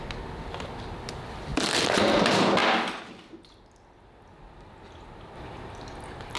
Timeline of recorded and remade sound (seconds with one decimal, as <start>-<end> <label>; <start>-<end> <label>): 0.0-6.4 recorded